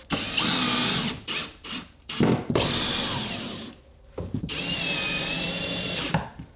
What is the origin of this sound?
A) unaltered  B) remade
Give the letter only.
B